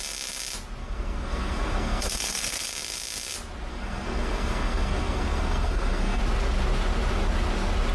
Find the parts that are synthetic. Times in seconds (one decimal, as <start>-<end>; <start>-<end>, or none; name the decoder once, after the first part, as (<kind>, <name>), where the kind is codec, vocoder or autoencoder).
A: 0.8-2.7 (codec, SNAC); 3.7-6.2